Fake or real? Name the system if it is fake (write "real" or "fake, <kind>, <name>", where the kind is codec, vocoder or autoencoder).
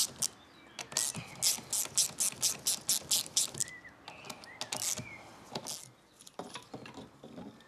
real